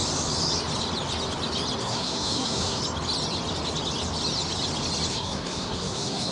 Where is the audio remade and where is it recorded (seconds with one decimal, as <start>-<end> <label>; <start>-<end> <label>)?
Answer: 0.0-1.8 recorded; 1.8-2.8 remade; 2.8-5.1 recorded; 5.1-6.3 remade